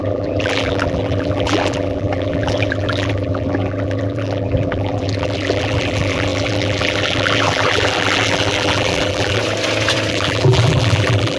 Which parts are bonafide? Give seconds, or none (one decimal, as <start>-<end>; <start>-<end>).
9.4-10.1